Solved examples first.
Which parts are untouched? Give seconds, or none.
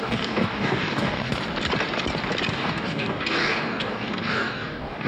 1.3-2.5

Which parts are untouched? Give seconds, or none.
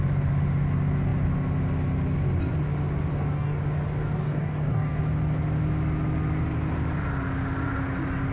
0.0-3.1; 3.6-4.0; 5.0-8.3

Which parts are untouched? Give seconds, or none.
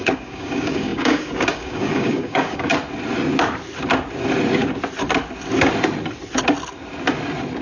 2.7-7.6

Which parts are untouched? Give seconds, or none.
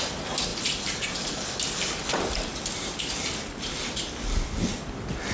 0.0-5.3